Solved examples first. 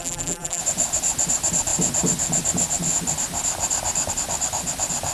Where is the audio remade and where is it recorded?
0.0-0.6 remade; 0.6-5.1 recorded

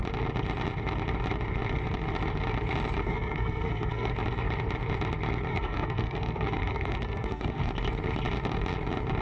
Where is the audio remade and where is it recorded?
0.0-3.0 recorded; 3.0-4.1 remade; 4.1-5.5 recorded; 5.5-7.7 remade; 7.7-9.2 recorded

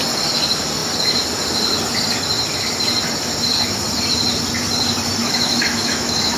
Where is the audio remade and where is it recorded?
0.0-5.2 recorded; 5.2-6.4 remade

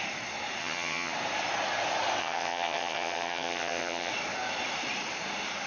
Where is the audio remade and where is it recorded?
0.0-0.6 recorded; 0.6-1.1 remade; 1.1-2.2 recorded; 2.2-4.1 remade; 4.1-5.7 recorded